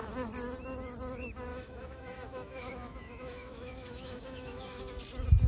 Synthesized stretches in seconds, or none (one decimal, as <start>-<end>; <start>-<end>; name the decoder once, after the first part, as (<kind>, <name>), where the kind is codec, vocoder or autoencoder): 1.5-4.8 (autoencoder, DAC-VAE)